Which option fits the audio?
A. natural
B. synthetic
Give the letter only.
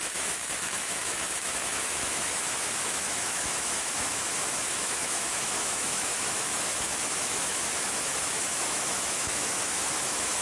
B